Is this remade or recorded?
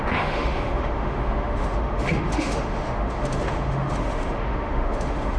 remade